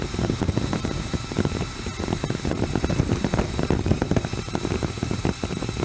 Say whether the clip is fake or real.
fake